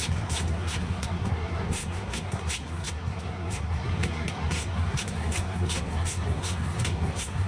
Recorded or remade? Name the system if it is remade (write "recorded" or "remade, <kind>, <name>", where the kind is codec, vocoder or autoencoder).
remade, codec, SNAC